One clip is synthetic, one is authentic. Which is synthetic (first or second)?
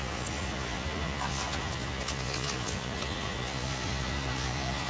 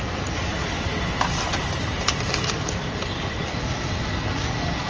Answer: first